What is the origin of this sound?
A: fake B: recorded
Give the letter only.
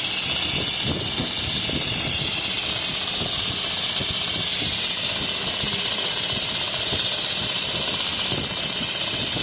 B